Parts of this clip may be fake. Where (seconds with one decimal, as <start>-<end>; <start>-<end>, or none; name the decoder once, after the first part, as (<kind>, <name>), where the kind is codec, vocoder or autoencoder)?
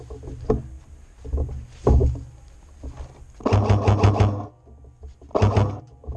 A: none